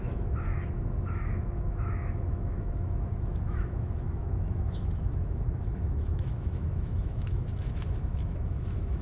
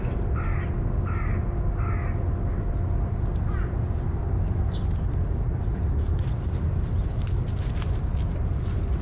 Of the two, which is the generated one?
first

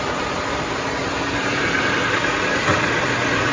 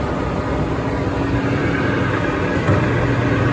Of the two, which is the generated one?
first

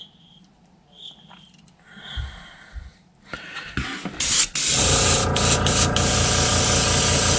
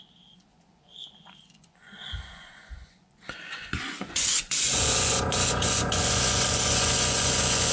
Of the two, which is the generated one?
second